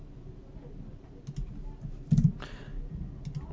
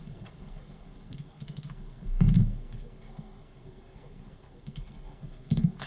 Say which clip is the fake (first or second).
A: second